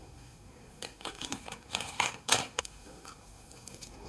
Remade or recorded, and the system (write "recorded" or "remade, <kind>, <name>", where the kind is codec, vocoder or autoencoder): remade, codec, SNAC